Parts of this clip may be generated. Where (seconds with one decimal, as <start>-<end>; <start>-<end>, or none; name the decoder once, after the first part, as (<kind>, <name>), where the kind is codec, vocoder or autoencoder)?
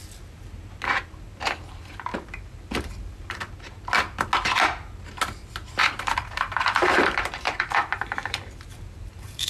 2.1-3.3 (vocoder, BigVGAN v2); 5.8-9.5